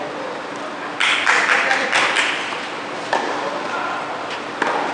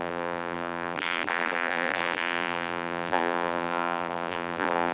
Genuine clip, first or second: first